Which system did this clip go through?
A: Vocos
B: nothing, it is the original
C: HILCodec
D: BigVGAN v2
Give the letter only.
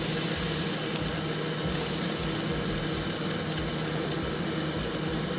B